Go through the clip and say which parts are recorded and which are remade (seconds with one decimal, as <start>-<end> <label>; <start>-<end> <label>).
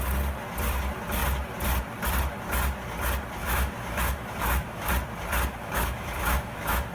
0.0-3.4 recorded; 3.4-4.9 remade; 4.9-5.5 recorded; 5.5-6.9 remade